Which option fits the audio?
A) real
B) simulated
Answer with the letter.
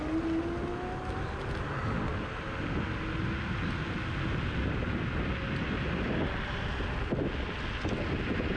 A